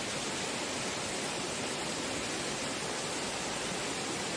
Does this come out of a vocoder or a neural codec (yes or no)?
no